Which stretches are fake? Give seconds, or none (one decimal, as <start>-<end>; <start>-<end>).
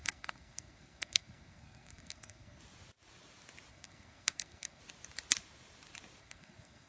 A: 0.0-2.6; 3.7-4.8; 6.2-6.9